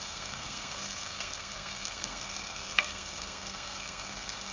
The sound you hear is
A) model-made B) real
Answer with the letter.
A